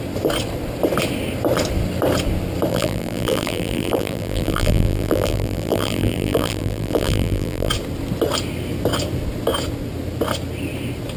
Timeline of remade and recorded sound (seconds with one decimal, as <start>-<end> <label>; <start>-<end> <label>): 0.0-2.7 recorded; 2.7-7.7 remade; 7.7-11.2 recorded